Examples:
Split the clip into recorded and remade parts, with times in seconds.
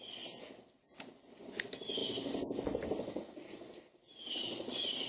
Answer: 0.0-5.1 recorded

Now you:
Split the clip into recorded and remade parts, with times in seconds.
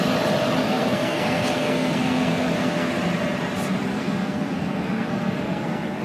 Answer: 0.0-0.6 recorded; 0.6-2.9 remade; 2.9-3.9 recorded; 3.9-6.0 remade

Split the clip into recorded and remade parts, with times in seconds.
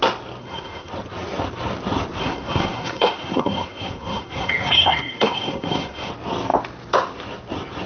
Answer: 0.0-0.4 recorded; 0.4-0.9 remade; 0.9-2.2 recorded; 2.2-6.1 remade; 6.1-7.9 recorded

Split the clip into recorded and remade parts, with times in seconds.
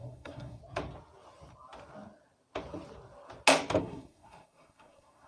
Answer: 0.0-0.6 remade; 0.6-3.8 recorded; 3.8-5.3 remade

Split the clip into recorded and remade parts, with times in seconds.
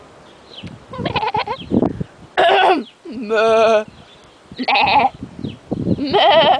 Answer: 0.0-6.6 recorded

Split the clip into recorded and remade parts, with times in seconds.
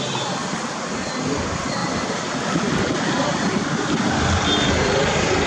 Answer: 0.0-5.5 recorded